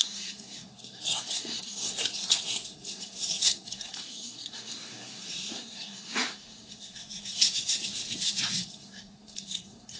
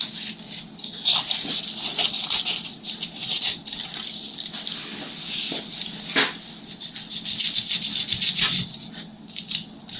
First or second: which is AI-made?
first